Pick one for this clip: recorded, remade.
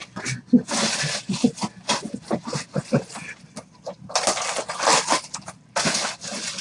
recorded